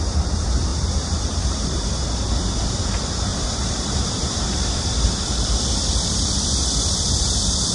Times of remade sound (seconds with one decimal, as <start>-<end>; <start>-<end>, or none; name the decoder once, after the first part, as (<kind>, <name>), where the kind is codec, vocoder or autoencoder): 0.7-1.9 (vocoder, BigVGAN v2); 3.3-5.1

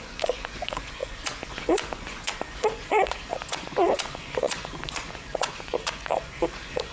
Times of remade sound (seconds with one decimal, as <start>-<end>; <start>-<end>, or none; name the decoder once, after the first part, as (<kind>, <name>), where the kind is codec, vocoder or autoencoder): 0.0-6.9 (vocoder, Vocos)

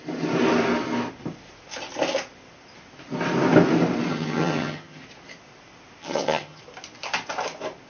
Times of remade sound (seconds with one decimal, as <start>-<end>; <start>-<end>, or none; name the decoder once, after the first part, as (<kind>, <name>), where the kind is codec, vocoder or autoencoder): 4.1-5.0 (vocoder, HiFi-GAN); 6.0-6.6

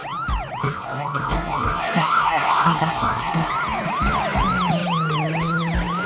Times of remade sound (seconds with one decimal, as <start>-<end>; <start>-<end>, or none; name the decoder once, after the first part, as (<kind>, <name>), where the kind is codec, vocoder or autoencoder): 0.6-3.5 (codec, SNAC)

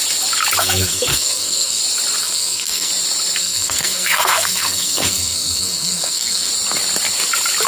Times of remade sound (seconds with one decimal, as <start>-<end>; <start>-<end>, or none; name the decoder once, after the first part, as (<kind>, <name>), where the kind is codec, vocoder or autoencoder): 0.6-1.8 (codec, SNAC); 2.2-2.9; 3.4-6.5